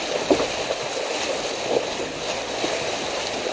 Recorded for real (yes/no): yes